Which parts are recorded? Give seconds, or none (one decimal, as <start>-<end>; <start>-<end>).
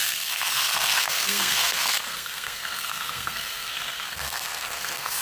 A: none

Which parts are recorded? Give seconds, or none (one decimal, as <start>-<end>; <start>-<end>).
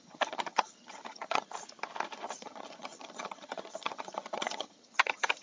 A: 1.5-2.4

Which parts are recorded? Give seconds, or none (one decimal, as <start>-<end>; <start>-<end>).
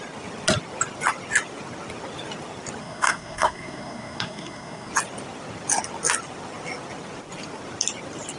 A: 0.0-2.8; 4.9-8.4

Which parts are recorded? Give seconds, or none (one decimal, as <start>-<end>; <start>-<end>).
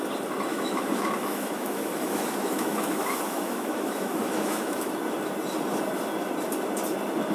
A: 0.0-0.5; 4.9-7.3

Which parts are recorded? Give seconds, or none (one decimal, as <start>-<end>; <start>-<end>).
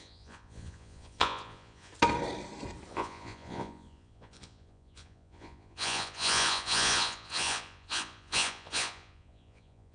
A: 1.9-2.9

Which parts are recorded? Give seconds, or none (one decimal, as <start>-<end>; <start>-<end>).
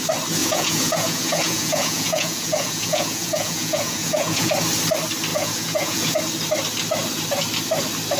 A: 0.0-0.4; 4.5-5.3; 6.2-8.2